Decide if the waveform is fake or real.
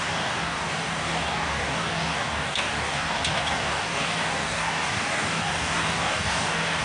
fake